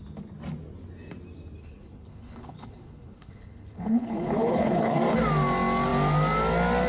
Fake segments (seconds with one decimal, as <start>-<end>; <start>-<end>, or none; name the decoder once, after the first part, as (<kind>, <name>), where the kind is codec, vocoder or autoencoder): 1.6-5.0 (codec, HILCodec)